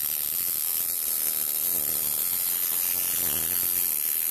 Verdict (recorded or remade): recorded